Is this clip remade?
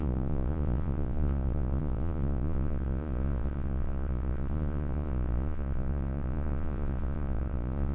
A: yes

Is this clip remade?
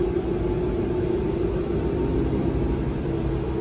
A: no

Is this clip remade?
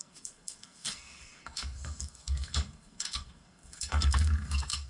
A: yes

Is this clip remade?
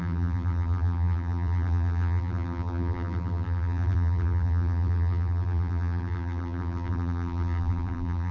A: yes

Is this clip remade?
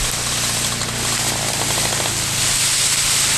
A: no